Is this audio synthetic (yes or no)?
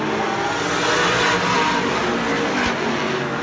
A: no